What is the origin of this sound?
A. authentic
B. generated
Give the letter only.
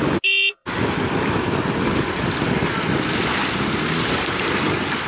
A